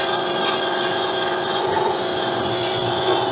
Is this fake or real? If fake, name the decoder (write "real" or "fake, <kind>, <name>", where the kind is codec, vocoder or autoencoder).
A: fake, vocoder, Vocos